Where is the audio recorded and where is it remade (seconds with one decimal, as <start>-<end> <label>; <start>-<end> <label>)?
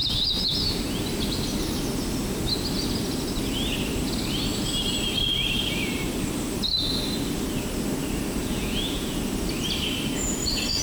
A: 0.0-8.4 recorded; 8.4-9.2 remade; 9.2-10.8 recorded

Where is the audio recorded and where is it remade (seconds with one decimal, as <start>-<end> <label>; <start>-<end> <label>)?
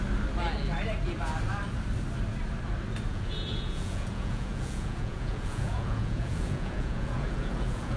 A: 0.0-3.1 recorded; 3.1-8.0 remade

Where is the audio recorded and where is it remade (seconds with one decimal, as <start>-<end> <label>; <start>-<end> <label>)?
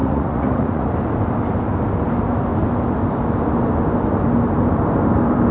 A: 0.0-0.9 remade; 0.9-5.5 recorded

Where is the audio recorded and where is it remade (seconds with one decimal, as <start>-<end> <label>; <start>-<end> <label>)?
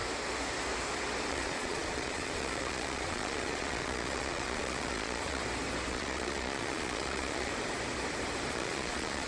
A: 0.0-1.3 recorded; 1.3-5.4 remade; 5.4-5.9 recorded; 5.9-7.5 remade; 7.5-8.5 recorded; 8.5-9.3 remade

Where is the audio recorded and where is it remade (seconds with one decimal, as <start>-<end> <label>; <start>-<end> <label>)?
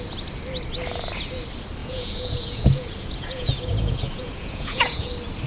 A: 0.0-1.8 recorded; 1.8-5.1 remade; 5.1-5.5 recorded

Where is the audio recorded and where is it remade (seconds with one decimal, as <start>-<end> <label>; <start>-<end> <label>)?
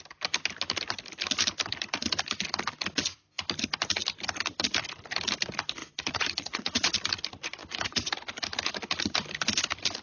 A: 0.0-5.8 recorded; 5.8-6.9 remade; 6.9-7.6 recorded; 7.6-8.1 remade; 8.1-10.0 recorded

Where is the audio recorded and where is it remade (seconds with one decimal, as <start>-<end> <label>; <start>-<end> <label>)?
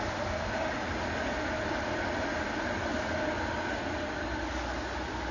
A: 0.0-5.3 recorded